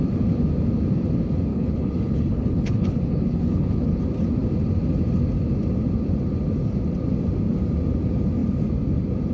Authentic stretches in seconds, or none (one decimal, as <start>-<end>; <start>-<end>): 0.0-1.5; 4.0-9.3